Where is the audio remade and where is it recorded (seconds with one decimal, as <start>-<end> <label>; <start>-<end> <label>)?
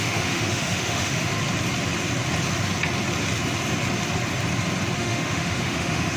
0.0-1.3 remade; 1.3-5.0 recorded; 5.0-6.2 remade